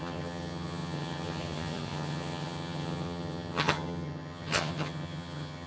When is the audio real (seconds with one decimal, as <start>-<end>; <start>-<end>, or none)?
none